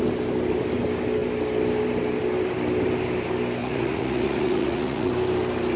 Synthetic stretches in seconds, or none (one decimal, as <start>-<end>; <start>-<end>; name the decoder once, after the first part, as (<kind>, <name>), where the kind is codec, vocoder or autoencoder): 3.6-5.1 (vocoder, Vocos)